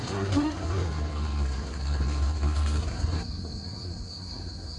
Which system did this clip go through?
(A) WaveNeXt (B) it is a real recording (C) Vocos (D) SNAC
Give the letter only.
D